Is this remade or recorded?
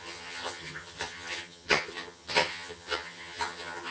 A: remade